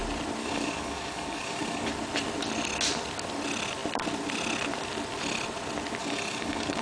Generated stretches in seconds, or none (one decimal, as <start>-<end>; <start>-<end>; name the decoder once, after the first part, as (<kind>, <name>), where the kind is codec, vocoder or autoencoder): 0.4-1.9 (codec, DAC); 6.0-6.8